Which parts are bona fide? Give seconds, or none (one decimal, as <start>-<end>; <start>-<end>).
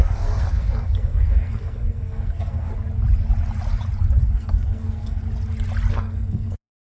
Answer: 2.7-4.2; 5.2-5.9